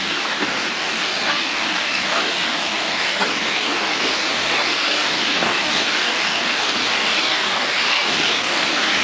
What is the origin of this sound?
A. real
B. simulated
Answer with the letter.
B